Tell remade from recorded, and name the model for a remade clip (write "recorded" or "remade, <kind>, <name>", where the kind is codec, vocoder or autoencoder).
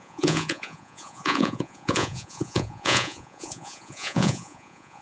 remade, vocoder, Vocos